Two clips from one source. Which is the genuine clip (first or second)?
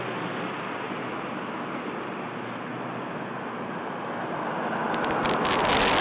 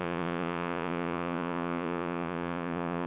first